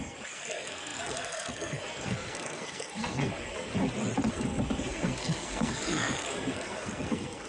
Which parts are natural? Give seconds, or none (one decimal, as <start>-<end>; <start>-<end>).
3.7-4.3